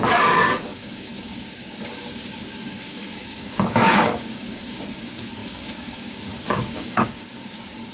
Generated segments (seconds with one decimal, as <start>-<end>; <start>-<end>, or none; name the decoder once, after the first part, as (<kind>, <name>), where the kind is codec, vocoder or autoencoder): 0.0-7.9 (codec, DAC)